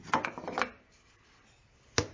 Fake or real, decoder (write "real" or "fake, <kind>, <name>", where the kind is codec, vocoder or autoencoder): real